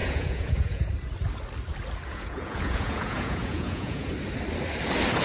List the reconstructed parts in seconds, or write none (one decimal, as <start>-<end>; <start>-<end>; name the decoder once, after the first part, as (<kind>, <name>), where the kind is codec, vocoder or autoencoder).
0.0-0.9 (vocoder, Vocos); 2.1-4.1